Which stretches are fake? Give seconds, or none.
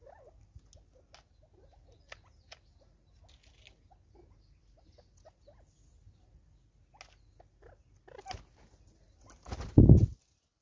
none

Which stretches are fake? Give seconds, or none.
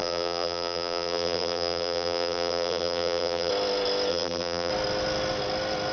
0.0-3.5 (vocoder, BigVGAN v2); 4.1-4.7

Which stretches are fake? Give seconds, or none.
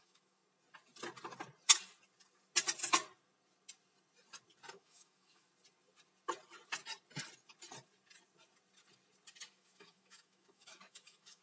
0.0-0.4 (autoencoder, DAC-VAE); 4.7-5.5; 9.5-11.4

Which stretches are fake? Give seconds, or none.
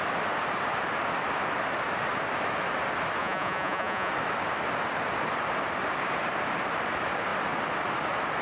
3.2-4.1 (vocoder, Vocos)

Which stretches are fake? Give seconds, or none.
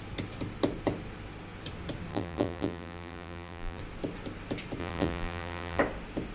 2.1-3.8 (vocoder, BigVGAN v2); 4.8-5.8